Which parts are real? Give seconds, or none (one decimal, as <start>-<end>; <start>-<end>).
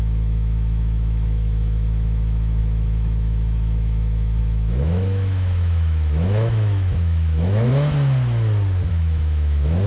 7.7-8.9